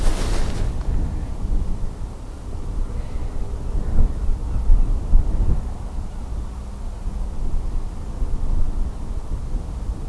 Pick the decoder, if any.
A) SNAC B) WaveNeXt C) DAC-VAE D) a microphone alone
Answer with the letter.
D